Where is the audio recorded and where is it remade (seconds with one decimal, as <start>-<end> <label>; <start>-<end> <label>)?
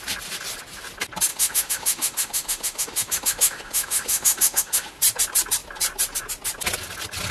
0.0-1.3 recorded; 1.3-5.0 remade; 5.0-7.3 recorded